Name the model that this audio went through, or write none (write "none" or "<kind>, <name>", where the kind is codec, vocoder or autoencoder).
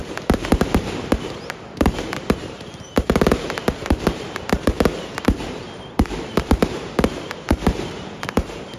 vocoder, BigVGAN v2